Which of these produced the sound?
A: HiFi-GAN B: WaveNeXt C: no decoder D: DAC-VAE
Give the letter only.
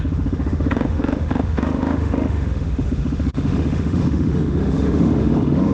D